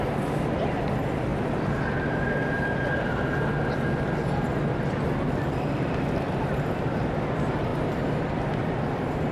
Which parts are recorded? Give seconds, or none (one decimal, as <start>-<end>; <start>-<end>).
1.3-4.8